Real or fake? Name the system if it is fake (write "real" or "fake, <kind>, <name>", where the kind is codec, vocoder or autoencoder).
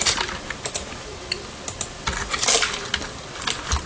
real